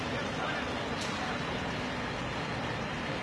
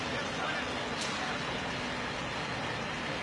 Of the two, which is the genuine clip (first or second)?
second